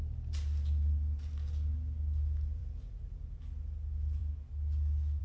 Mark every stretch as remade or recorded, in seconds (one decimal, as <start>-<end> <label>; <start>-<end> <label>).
0.0-5.2 recorded